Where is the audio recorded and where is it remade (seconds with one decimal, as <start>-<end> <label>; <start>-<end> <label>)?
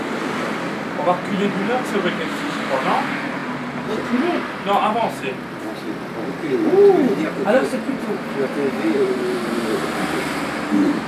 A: 0.0-8.6 recorded; 8.6-11.1 remade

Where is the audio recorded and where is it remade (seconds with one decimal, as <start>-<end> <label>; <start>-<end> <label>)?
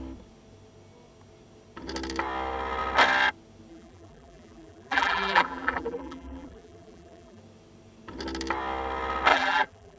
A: 0.0-3.7 recorded; 3.7-7.4 remade; 7.4-9.3 recorded; 9.3-10.0 remade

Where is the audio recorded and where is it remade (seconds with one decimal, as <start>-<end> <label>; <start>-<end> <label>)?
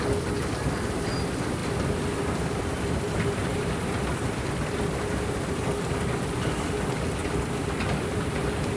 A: 0.0-3.4 recorded; 3.4-4.2 remade; 4.2-7.2 recorded; 7.2-8.4 remade; 8.4-8.8 recorded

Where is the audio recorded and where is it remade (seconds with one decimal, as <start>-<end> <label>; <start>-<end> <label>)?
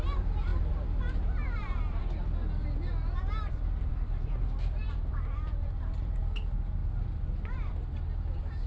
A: 0.0-2.0 remade; 2.0-3.4 recorded; 3.4-6.8 remade; 6.8-8.7 recorded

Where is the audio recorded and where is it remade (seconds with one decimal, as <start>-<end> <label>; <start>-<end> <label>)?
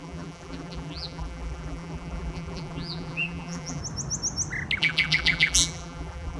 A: 0.0-3.8 remade; 3.8-4.8 recorded; 4.8-6.4 remade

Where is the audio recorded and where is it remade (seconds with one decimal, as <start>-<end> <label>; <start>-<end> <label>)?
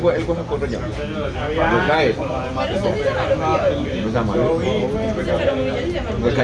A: 0.0-6.4 recorded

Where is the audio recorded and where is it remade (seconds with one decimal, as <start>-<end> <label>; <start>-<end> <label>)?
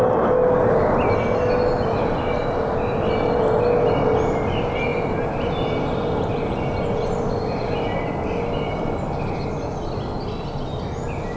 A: 0.0-11.4 recorded